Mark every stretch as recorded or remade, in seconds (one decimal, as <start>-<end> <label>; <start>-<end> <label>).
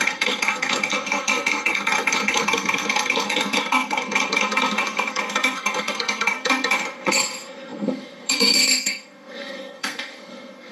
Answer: 0.0-10.7 remade